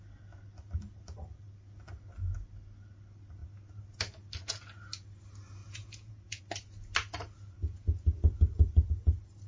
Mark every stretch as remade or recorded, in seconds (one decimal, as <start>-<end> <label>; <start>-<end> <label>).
0.0-5.6 recorded; 5.6-6.4 remade; 6.4-9.5 recorded